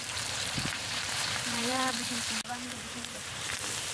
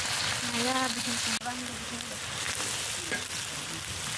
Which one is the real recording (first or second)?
second